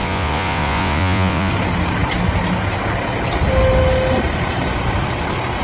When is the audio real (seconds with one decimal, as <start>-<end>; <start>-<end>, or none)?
1.5-5.6